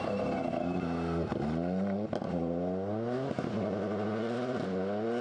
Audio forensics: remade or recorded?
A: recorded